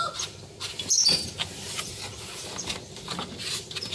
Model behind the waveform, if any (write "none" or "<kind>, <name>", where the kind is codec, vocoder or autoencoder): none